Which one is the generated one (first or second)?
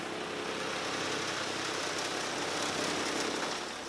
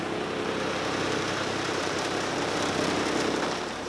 second